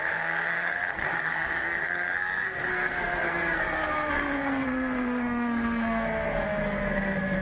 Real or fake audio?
fake